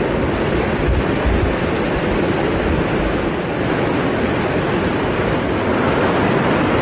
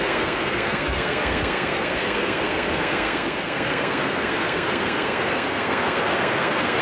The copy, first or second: second